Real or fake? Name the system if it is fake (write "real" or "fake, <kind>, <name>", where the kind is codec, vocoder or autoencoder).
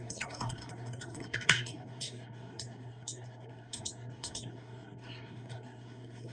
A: fake, codec, SNAC